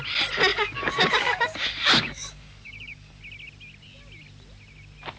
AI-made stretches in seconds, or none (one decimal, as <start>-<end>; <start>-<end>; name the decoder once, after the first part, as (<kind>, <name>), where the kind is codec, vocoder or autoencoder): 0.5-3.2 (codec, DAC)